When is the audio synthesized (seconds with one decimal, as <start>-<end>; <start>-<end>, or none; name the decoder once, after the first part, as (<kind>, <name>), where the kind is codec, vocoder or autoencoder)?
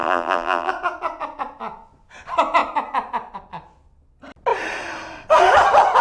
0.0-0.7 (vocoder, BigVGAN v2)